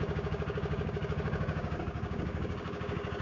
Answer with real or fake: fake